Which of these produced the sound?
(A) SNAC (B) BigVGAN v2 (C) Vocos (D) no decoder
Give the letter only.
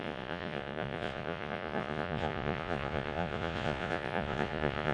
C